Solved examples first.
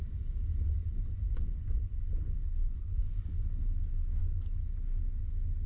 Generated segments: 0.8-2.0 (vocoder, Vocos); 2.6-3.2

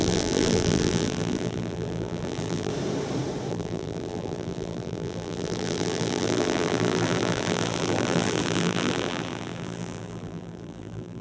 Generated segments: 0.0-2.7 (vocoder, BigVGAN v2); 3.5-11.2

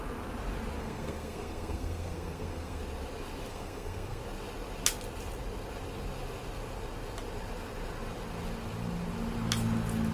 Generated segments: 0.8-2.8 (codec, SNAC); 3.5-4.2

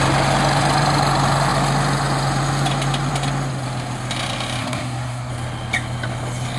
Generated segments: 4.6-5.3 (codec, SNAC)

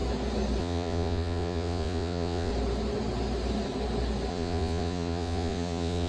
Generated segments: 0.6-2.5 (vocoder, Vocos); 4.3-6.1

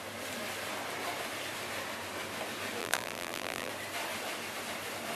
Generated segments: 2.8-3.7 (vocoder, BigVGAN v2)